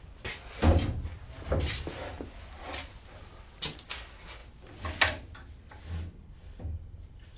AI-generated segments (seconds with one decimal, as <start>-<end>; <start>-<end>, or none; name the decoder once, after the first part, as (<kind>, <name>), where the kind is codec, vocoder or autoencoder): none